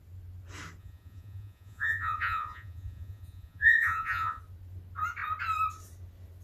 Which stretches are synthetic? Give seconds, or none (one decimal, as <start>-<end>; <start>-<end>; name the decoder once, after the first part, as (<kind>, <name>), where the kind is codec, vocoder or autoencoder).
0.8-4.4 (vocoder, Vocos)